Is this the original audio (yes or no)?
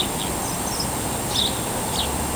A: yes